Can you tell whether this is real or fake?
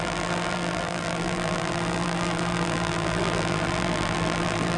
fake